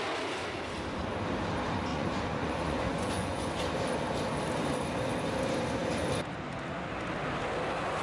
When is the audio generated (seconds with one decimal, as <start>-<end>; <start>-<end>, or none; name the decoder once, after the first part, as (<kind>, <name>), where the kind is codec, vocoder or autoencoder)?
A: 1.9-3.5 (vocoder, Vocos)